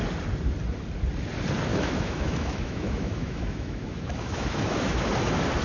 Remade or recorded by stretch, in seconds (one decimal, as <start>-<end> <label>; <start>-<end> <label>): 0.0-1.7 recorded; 1.7-5.1 remade; 5.1-5.6 recorded